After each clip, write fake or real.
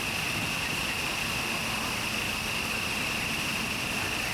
real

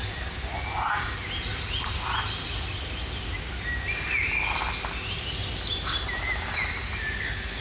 real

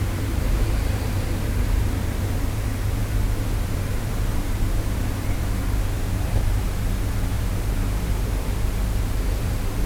fake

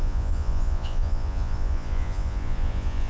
fake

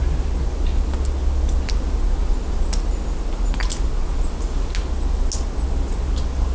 real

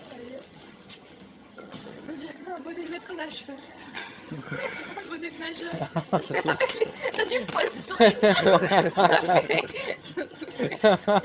fake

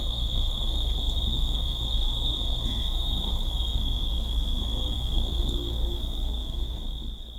fake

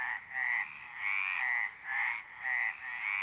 real